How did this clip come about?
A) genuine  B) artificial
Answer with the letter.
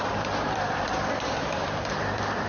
B